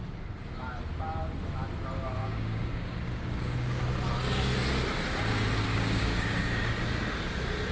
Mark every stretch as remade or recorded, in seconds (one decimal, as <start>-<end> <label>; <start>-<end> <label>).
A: 0.0-2.2 recorded; 2.2-3.8 remade; 3.8-5.7 recorded; 5.7-6.7 remade; 6.7-7.7 recorded